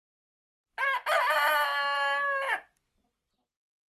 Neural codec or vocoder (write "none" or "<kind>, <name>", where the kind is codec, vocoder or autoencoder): none